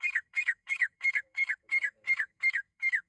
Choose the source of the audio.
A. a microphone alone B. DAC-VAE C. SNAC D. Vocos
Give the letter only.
C